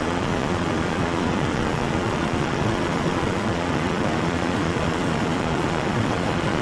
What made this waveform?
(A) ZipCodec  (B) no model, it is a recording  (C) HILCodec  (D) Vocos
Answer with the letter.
D